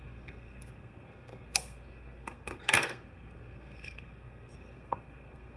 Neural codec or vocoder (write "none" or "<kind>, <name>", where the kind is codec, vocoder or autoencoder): codec, SNAC